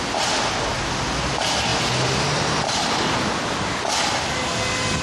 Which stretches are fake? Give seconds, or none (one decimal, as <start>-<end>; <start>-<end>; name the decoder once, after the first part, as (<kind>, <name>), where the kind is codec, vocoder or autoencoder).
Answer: 1.7-3.3 (vocoder, BigVGAN v2)